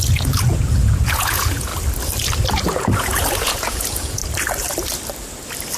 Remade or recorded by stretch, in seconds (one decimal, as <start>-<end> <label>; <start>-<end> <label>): 0.0-1.7 remade; 1.7-2.5 recorded; 2.5-4.2 remade; 4.2-5.8 recorded